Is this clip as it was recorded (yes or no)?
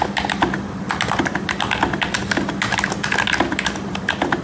yes